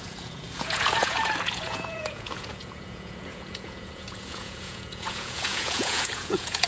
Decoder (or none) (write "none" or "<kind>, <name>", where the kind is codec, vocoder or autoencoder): vocoder, Vocos